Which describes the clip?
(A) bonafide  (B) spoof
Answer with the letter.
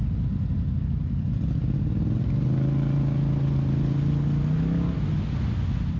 A